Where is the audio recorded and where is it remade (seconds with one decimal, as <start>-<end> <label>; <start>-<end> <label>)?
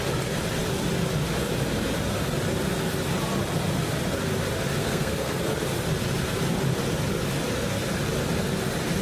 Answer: 0.0-4.8 recorded; 4.8-5.4 remade; 5.4-9.0 recorded